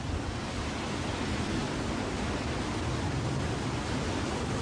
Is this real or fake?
real